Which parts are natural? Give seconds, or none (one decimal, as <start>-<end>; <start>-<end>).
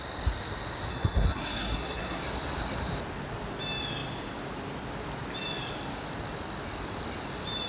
0.0-0.9; 2.2-7.7